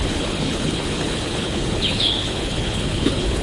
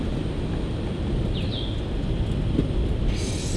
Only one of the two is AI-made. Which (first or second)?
first